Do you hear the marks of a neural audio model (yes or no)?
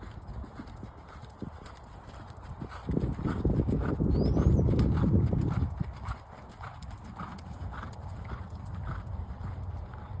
no